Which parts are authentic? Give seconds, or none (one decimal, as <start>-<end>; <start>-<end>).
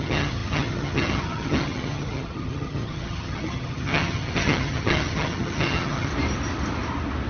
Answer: 6.1-7.3